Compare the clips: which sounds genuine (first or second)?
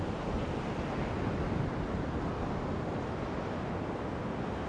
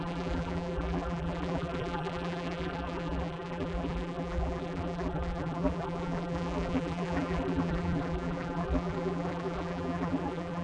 first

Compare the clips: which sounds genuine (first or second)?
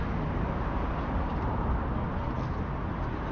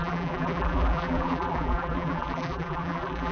first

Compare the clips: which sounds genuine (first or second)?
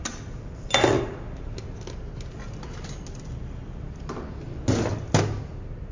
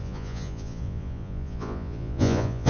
first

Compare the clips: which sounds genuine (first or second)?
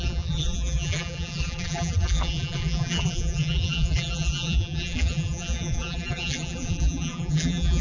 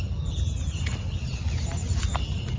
second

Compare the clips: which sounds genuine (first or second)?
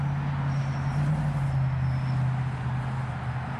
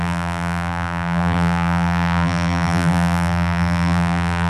first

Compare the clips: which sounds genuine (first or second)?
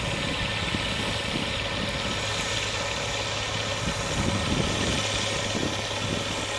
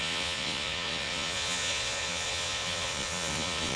first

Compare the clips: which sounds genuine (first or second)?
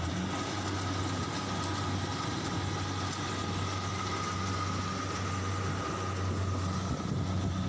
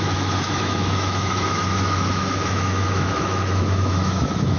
first